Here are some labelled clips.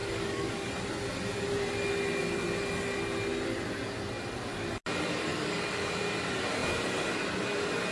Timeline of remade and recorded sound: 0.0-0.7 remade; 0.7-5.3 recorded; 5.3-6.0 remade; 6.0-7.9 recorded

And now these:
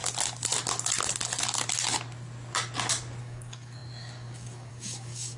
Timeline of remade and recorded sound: 0.0-3.2 recorded; 3.2-5.4 remade

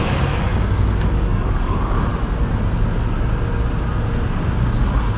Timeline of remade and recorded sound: 0.0-2.1 remade; 2.1-5.2 recorded

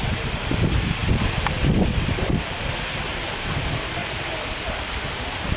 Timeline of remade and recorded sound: 0.0-5.6 recorded

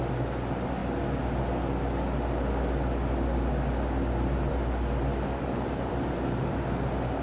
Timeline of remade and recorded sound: 0.0-7.2 recorded